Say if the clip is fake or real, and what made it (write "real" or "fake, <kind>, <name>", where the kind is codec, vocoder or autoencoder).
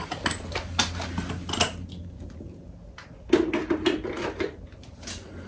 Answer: real